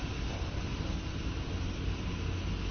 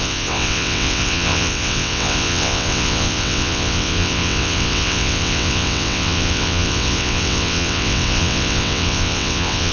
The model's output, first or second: second